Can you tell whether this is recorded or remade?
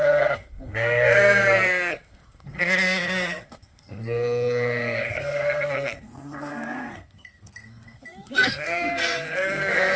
remade